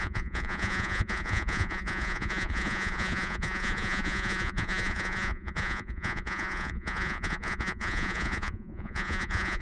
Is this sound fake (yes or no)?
yes